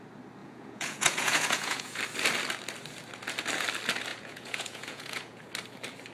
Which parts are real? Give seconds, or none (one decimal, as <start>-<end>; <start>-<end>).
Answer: 0.0-0.4; 2.0-4.1; 5.5-6.1